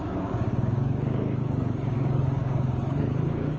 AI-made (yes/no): yes